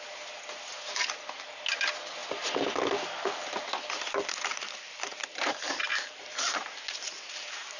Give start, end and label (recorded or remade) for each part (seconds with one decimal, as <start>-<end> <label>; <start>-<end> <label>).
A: 0.0-5.9 recorded; 5.9-7.8 remade